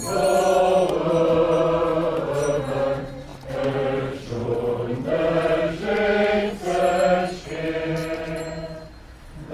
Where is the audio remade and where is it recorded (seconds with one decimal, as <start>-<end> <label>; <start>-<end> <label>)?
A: 0.0-1.9 recorded; 1.9-2.6 remade; 2.6-4.4 recorded; 4.4-5.6 remade; 5.6-9.5 recorded